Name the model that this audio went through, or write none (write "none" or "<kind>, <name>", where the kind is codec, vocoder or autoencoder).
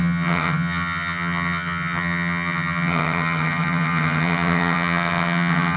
vocoder, HiFi-GAN